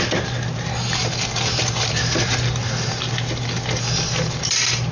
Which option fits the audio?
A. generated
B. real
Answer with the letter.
B